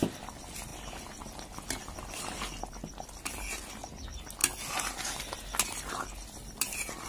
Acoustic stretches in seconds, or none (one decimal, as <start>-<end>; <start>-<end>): 0.0-7.1